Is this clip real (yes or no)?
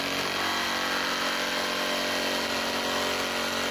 yes